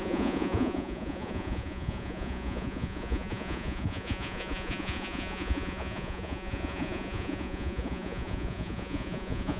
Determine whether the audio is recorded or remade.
remade